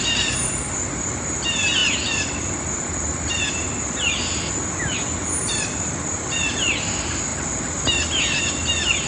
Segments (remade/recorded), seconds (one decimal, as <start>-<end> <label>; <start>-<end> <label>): 0.0-9.1 recorded